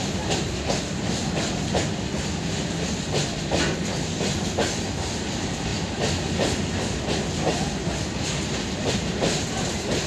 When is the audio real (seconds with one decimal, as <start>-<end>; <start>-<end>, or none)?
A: 0.0-10.1